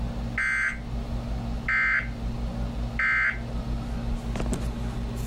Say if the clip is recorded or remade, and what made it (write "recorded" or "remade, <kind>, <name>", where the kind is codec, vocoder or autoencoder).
recorded